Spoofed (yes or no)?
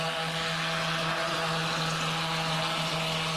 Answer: no